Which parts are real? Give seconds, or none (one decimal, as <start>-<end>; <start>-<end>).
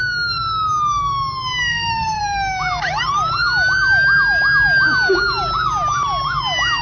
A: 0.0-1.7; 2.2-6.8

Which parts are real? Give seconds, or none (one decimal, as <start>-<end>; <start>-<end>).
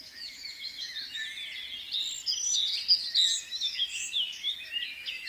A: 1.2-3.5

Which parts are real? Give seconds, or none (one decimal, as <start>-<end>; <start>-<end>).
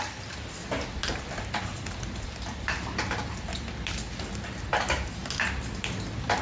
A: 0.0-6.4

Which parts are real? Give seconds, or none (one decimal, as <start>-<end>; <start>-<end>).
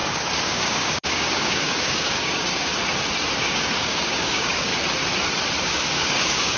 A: 2.7-3.4; 4.7-5.6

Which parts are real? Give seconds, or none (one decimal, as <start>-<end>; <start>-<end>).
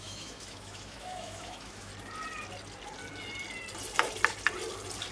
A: 1.9-5.1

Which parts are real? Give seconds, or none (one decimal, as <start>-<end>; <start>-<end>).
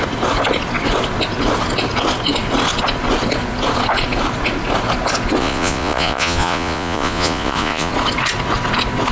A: 0.0-5.4; 7.9-9.1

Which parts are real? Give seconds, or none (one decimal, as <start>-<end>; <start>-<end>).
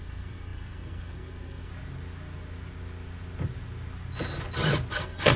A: 1.7-4.9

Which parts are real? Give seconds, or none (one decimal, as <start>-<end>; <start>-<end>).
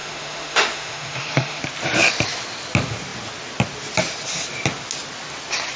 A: 1.6-5.8